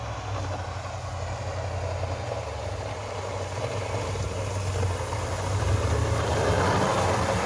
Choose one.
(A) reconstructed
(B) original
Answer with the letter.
B